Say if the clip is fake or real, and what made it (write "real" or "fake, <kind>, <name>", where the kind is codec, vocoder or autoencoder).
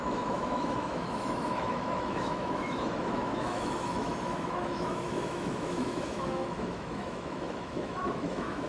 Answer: fake, autoencoder, DAC-VAE